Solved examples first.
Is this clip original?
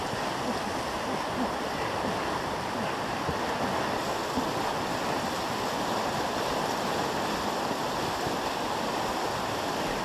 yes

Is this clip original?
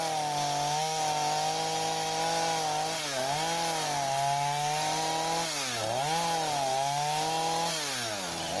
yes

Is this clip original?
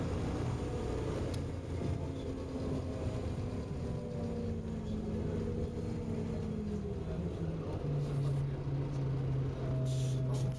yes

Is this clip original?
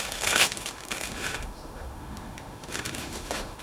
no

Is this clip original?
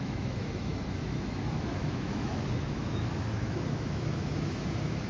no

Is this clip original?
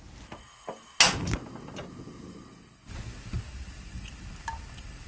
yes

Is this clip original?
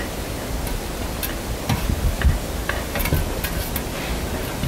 yes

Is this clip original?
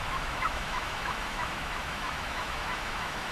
no